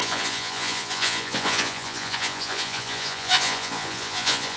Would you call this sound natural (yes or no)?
no